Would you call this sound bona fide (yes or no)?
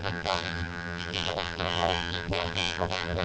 no